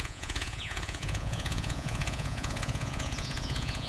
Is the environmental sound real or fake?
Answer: fake